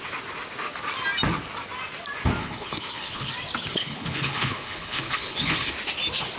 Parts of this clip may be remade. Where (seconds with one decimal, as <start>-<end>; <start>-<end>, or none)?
2.4-3.3; 3.7-5.7

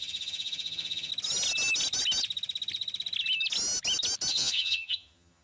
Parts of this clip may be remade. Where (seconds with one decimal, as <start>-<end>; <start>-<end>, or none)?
0.0-1.1; 4.3-5.4

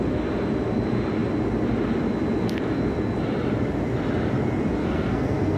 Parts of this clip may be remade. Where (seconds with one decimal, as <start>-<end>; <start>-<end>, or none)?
4.8-5.6

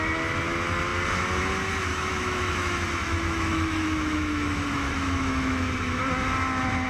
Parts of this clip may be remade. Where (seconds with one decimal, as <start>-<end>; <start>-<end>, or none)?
1.9-6.0

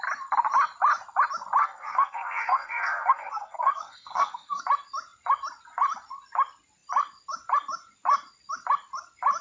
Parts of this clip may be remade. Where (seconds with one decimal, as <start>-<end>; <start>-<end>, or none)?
1.6-4.6

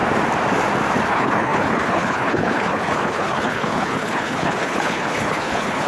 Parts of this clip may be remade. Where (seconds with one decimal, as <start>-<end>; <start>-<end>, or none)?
1.1-5.9

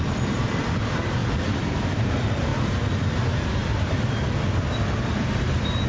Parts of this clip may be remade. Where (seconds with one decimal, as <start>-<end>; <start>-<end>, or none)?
0.0-2.5; 3.1-5.9

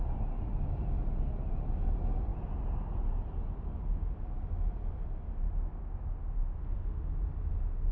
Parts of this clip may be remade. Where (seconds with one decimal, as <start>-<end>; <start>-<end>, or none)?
none